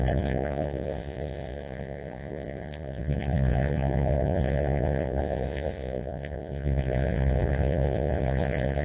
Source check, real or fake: fake